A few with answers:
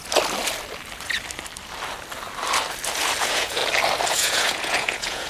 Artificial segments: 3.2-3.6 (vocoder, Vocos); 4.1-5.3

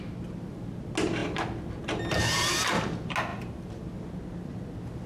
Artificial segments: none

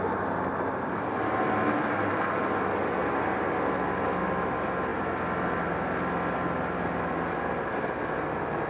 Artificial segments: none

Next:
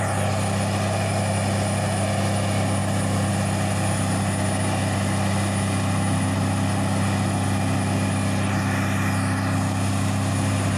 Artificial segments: none

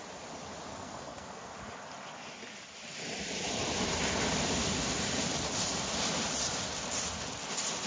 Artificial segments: 0.7-1.5 (codec, SNAC)